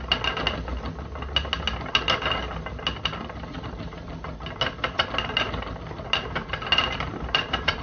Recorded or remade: recorded